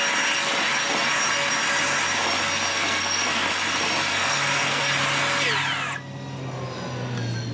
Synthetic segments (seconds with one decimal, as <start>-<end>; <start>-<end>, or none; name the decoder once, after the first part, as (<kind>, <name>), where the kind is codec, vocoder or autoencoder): 2.7-3.5 (codec, SNAC); 4.1-4.8